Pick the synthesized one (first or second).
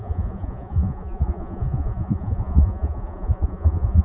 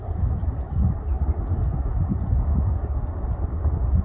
first